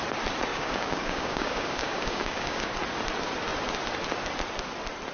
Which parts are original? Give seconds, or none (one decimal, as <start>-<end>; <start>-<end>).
0.0-0.5; 2.7-5.1